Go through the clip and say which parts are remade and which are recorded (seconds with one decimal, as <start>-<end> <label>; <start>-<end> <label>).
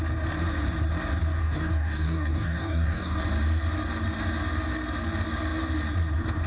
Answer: 0.0-1.4 recorded; 1.4-3.2 remade; 3.2-6.5 recorded